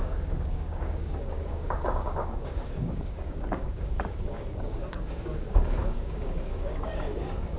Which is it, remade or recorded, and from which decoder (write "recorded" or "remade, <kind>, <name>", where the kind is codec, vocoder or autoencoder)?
remade, codec, DAC